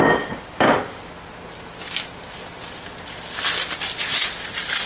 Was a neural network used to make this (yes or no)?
no